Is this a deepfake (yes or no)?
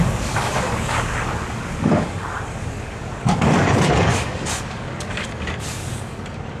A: yes